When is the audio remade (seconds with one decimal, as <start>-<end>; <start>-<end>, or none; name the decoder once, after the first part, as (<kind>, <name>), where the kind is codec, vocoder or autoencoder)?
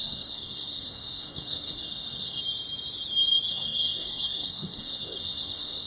0.0-2.4 (codec, SNAC); 3.5-5.9